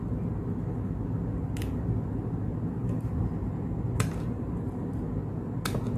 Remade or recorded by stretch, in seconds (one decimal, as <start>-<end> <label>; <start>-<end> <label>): 0.0-6.0 recorded